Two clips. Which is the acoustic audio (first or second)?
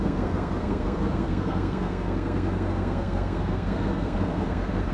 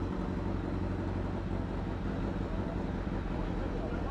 second